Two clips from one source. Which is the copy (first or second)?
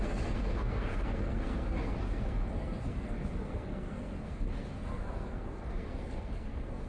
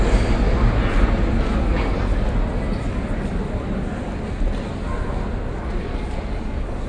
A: first